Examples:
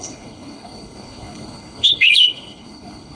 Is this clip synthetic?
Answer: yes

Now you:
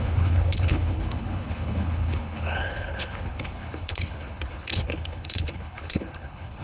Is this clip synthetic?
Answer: yes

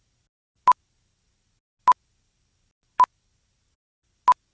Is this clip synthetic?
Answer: no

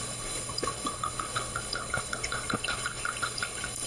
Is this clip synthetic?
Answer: yes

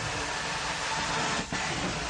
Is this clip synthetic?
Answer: no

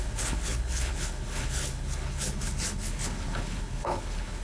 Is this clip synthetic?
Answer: yes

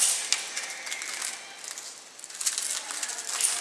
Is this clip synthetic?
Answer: no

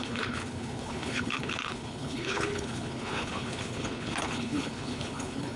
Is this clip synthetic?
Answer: yes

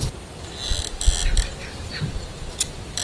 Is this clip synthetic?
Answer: no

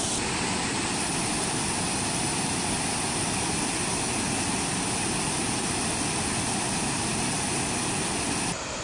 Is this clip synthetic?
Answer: no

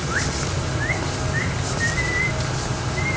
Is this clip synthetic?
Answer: no